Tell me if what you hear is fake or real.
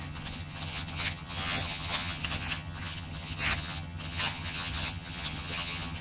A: fake